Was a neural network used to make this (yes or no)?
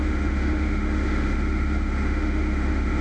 yes